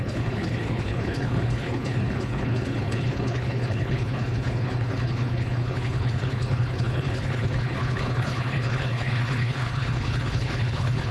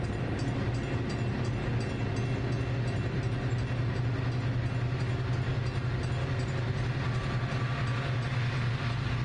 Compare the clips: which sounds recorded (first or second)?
second